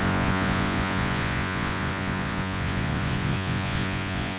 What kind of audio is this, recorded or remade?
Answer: remade